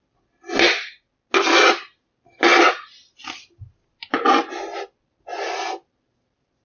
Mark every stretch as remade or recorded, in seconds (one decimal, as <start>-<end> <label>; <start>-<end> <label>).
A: 0.0-6.6 recorded